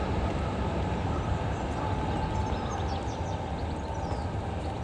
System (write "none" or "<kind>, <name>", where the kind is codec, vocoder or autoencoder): none